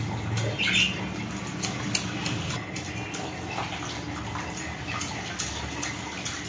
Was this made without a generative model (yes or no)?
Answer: yes